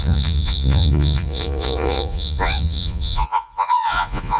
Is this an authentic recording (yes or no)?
no